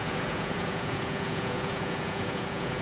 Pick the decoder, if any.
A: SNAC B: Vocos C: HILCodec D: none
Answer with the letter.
B